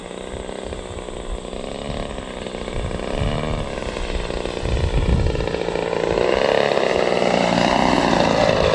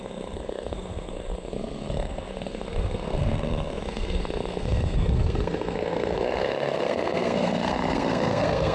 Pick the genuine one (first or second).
first